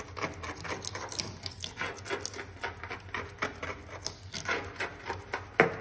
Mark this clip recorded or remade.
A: recorded